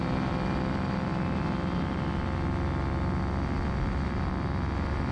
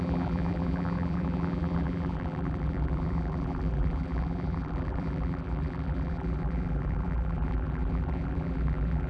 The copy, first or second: second